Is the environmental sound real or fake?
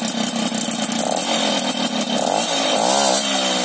real